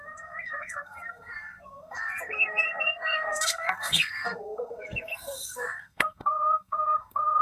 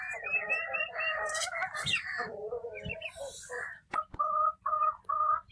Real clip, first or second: second